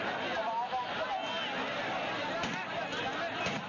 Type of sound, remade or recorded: recorded